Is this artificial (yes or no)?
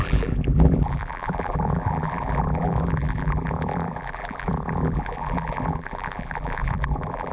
yes